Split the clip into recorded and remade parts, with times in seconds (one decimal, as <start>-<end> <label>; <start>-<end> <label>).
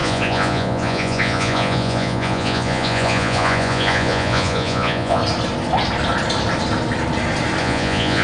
0.0-5.2 remade; 5.2-7.6 recorded; 7.6-8.2 remade